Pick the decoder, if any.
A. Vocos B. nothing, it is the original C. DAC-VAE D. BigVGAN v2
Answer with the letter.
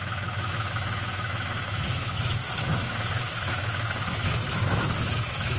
C